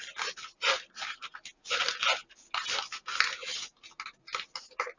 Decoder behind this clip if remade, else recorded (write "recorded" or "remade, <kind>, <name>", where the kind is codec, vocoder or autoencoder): recorded